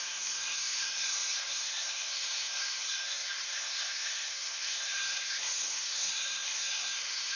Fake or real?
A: fake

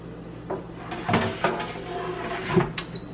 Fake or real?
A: real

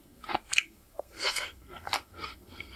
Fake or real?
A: fake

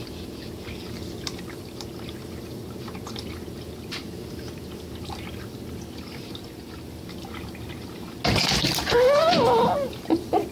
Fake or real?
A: real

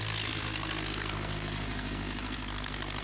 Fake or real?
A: fake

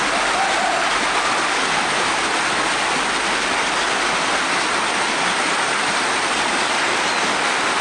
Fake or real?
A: real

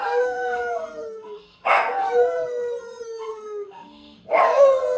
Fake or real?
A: fake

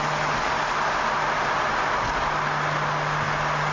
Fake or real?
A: real